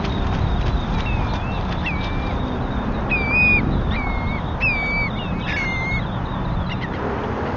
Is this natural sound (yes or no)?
yes